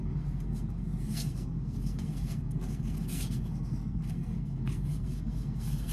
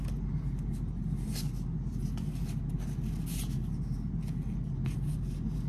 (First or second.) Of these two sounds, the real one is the second